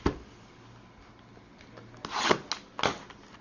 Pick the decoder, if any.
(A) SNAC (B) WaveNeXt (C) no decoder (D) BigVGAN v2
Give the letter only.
C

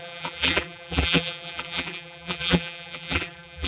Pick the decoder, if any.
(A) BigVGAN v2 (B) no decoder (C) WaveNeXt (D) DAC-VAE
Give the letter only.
A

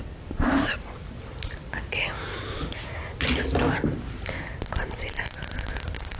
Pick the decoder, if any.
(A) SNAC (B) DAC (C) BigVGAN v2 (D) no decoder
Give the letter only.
C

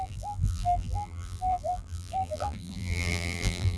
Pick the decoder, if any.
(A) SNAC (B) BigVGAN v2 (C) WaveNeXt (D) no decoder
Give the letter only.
B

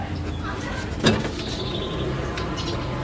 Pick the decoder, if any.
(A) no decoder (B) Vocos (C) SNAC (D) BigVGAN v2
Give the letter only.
A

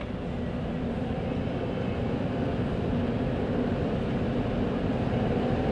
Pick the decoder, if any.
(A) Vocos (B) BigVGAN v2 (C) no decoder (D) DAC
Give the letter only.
B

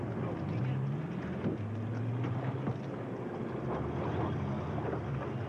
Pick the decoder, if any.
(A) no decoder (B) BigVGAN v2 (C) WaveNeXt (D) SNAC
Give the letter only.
A